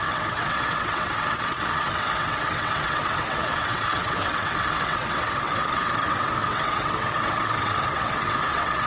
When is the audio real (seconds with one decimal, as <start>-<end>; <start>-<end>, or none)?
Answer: none